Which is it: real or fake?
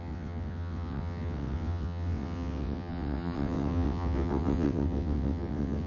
fake